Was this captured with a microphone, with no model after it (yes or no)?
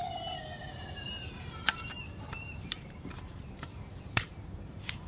no